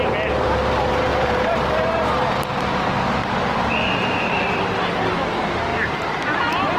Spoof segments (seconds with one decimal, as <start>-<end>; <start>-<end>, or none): 1.1-4.6; 5.7-6.2